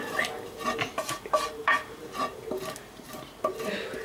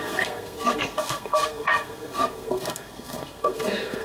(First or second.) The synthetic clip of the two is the second